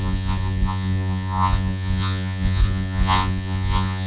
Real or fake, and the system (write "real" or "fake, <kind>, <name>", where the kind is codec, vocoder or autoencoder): fake, vocoder, Vocos